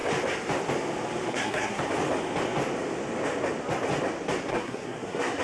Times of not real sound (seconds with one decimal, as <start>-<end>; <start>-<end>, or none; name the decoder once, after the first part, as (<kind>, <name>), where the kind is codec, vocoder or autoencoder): 1.3-1.8 (codec, SNAC); 4.5-5.4